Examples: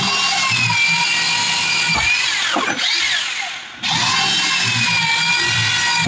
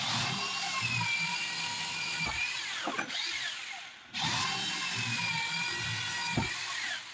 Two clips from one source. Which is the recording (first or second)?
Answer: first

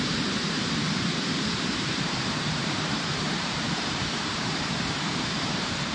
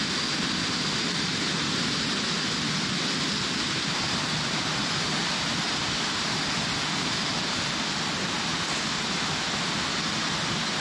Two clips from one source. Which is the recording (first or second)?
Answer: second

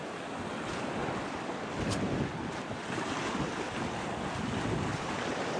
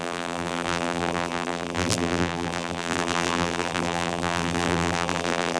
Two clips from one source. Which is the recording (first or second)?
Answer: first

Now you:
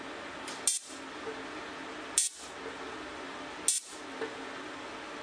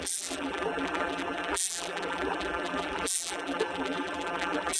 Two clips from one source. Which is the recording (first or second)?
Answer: first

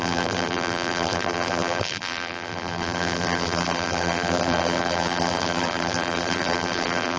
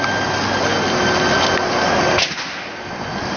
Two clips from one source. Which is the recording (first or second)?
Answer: second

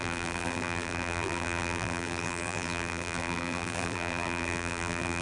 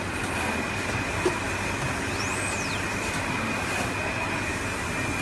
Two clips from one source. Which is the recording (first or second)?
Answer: second